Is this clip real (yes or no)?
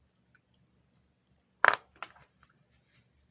no